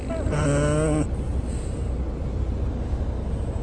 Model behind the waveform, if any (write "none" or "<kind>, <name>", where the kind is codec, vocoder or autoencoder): none